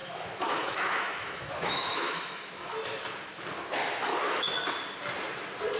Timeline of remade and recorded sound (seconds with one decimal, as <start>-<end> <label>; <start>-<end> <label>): 0.0-2.7 remade; 2.7-4.1 recorded; 4.1-4.7 remade; 4.7-5.8 recorded